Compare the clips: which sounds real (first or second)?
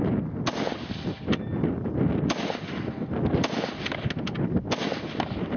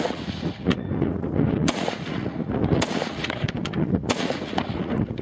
first